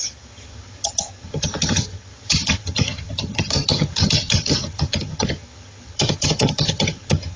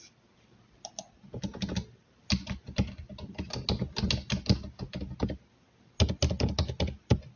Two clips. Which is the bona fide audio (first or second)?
second